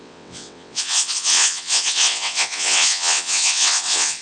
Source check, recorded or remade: remade